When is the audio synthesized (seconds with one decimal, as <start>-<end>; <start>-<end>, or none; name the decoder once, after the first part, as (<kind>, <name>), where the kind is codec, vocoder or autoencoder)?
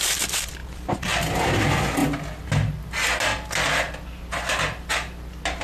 none